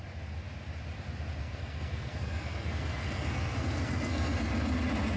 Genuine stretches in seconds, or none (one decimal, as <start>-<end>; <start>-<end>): 0.0-1.4; 4.5-5.2